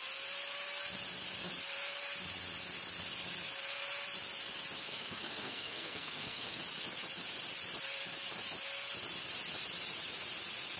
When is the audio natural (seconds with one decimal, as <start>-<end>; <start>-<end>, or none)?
0.0-4.8; 6.6-10.8